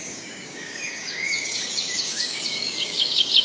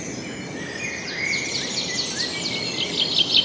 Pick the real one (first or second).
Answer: second